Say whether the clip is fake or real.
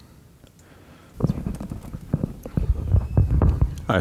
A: real